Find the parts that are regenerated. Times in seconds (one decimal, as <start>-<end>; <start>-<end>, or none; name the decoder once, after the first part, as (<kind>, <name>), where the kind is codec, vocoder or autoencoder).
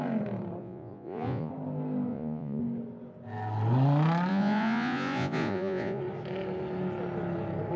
0.6-1.5 (vocoder, Vocos); 2.1-2.6; 4.3-6.0